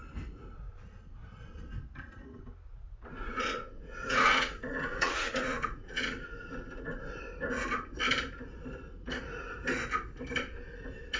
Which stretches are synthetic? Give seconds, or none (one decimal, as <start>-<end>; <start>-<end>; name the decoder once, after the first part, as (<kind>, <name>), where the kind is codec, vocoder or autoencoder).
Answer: 2.7-7.2 (vocoder, Vocos)